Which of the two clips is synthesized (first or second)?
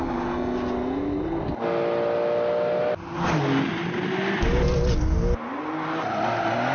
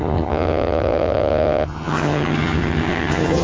second